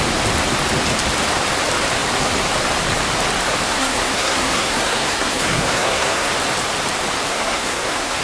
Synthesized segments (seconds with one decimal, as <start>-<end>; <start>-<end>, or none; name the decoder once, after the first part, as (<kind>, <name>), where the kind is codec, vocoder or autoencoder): 3.7-6.3 (codec, SNAC); 7.3-8.2